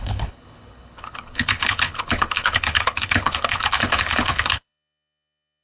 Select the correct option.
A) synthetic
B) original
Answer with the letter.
A